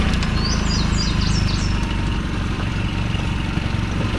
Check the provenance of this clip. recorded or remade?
recorded